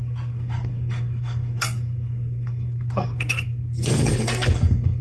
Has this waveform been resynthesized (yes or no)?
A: yes